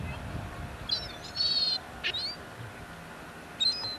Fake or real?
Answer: real